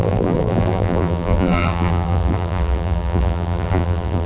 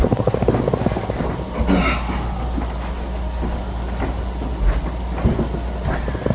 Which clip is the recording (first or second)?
second